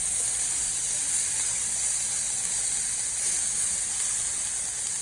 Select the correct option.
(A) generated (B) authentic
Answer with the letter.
B